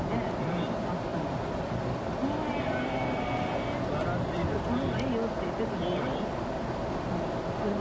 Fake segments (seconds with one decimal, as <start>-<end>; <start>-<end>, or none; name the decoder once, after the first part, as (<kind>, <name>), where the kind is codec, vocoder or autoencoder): none